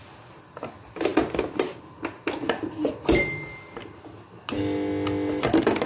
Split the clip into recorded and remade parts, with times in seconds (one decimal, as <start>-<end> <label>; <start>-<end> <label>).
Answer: 0.0-5.9 recorded